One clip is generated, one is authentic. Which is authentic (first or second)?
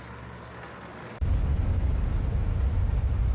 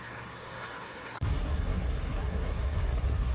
first